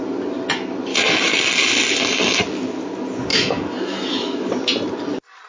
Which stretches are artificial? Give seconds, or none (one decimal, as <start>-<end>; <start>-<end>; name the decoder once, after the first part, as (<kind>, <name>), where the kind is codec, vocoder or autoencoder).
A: 0.9-1.4 (autoencoder, DAC-VAE); 3.3-4.5